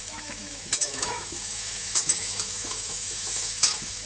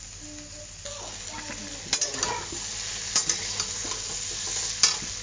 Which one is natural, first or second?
second